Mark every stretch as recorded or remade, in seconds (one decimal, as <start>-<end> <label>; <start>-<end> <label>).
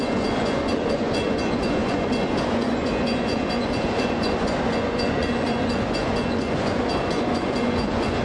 0.0-8.2 remade